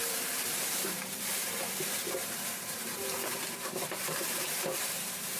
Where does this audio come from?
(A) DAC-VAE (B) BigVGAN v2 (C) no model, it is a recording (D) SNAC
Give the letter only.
B